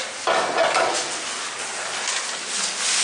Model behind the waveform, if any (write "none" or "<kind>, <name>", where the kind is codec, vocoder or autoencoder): none